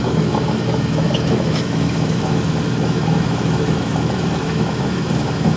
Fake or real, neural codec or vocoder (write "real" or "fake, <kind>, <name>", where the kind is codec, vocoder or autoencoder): fake, autoencoder, DAC-VAE